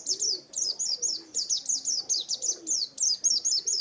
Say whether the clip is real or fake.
real